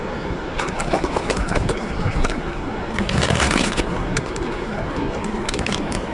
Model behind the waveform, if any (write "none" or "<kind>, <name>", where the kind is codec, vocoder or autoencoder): codec, SNAC